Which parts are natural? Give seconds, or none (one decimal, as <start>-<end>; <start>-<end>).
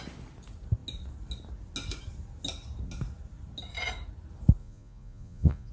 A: 0.0-4.6